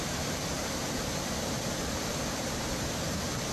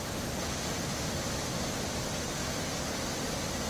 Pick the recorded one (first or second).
second